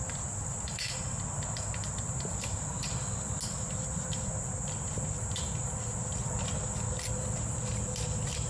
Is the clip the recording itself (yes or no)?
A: yes